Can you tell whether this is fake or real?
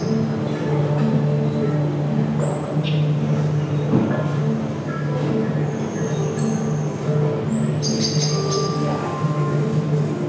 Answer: real